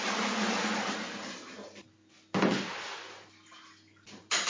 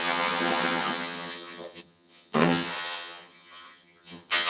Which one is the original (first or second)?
first